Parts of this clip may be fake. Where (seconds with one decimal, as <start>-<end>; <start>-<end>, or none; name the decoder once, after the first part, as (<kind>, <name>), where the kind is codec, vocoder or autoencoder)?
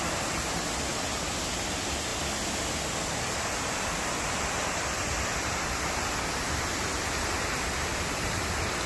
2.1-6.6 (vocoder, BigVGAN v2); 7.9-8.5